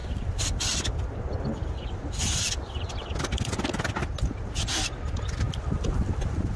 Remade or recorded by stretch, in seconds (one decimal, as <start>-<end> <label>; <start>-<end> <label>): 0.0-0.8 remade; 0.8-2.2 recorded; 2.2-3.1 remade; 3.1-6.6 recorded